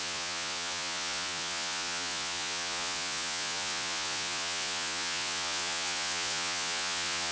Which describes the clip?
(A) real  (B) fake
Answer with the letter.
B